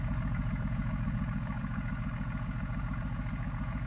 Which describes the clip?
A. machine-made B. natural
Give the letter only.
A